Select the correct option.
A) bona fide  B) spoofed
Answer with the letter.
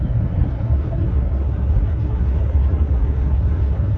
B